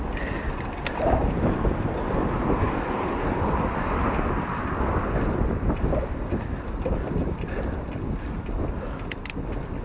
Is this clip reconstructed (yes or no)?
no